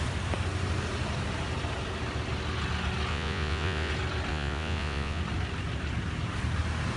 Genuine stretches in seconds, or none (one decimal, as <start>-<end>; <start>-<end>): 0.0-3.1; 3.9-4.3; 5.2-7.0